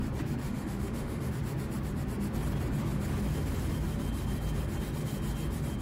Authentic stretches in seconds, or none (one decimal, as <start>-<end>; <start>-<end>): 0.0-0.4; 1.3-5.8